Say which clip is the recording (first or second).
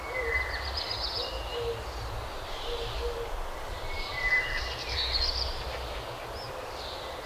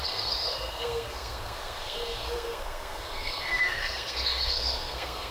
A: first